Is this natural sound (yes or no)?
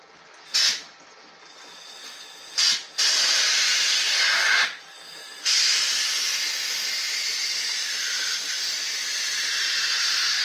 yes